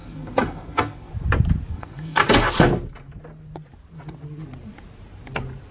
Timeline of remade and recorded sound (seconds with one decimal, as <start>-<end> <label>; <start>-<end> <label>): 0.0-1.1 remade; 1.1-1.7 recorded; 1.7-2.2 remade; 2.2-5.7 recorded